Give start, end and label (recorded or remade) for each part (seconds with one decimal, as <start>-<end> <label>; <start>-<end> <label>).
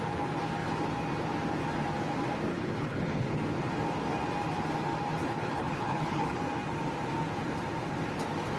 0.0-2.5 recorded; 2.5-3.4 remade; 3.4-5.2 recorded; 5.2-6.4 remade; 6.4-8.6 recorded